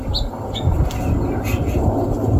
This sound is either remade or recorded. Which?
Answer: recorded